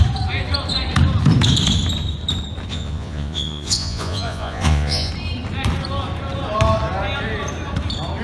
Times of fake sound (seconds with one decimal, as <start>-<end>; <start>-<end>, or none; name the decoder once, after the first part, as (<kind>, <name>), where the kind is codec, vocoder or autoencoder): 2.7-5.1 (vocoder, Vocos)